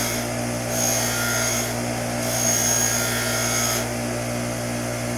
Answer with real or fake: real